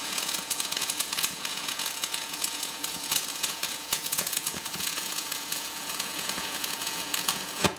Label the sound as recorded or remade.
remade